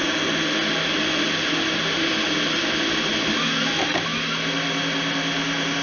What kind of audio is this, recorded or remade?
recorded